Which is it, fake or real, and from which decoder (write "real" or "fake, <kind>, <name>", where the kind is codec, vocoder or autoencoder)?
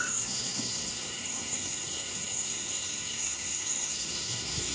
fake, codec, SNAC